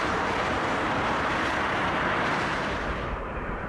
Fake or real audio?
fake